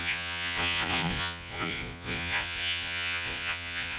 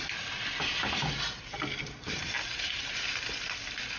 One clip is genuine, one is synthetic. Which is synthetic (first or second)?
first